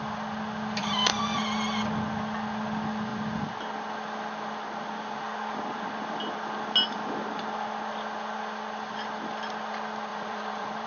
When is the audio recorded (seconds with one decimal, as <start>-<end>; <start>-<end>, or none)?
0.0-0.8; 1.4-10.1